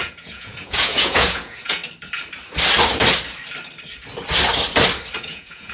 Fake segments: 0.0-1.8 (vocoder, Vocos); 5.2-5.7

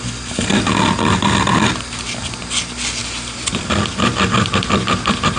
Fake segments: 0.0-0.5 (vocoder, BigVGAN v2); 1.0-5.4

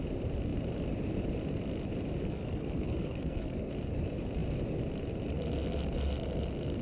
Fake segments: 2.2-3.7 (codec, SNAC)

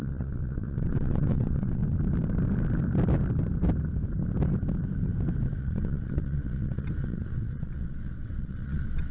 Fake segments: 0.0-1.8 (vocoder, WaveNeXt); 5.6-9.1

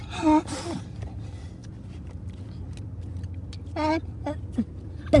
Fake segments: none

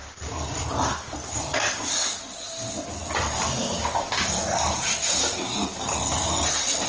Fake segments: 0.0-1.4 (vocoder, BigVGAN v2); 3.0-5.6

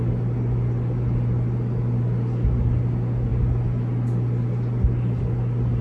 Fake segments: none

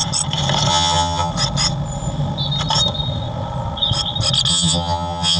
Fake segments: 0.7-1.3 (vocoder, HiFi-GAN); 4.5-5.4